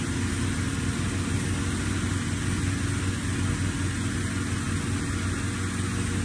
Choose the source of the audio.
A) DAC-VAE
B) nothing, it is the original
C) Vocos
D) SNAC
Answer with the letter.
B